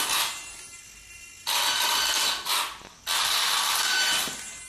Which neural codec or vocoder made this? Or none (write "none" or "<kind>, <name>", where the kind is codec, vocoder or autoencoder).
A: none